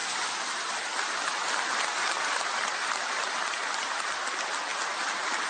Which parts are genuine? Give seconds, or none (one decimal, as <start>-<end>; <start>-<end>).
0.0-5.5